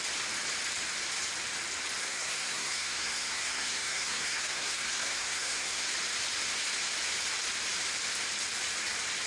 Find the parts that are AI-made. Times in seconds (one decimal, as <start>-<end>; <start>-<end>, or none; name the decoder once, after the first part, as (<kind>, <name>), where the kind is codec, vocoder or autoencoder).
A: 2.0-5.9 (codec, SNAC)